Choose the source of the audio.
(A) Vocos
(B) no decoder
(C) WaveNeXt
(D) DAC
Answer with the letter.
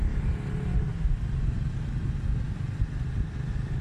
B